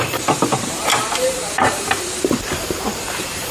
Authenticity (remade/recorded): remade